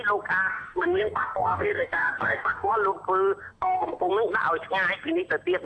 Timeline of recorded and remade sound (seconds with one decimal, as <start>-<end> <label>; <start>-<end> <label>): 0.0-0.5 recorded; 0.5-2.7 remade; 2.7-3.4 recorded; 3.4-4.1 remade; 4.1-5.7 recorded